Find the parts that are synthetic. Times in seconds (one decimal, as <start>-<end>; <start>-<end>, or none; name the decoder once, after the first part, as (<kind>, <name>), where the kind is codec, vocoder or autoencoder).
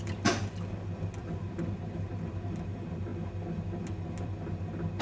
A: 1.2-1.8 (vocoder, BigVGAN v2)